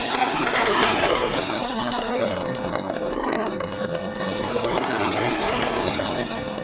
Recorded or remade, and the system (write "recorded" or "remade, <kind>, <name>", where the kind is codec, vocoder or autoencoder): remade, codec, SNAC